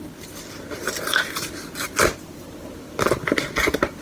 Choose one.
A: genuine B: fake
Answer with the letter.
A